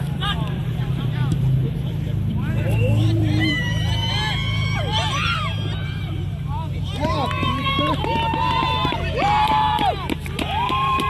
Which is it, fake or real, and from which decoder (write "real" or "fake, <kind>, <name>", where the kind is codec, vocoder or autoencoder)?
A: fake, vocoder, BigVGAN v2